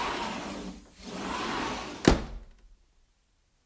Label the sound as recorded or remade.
recorded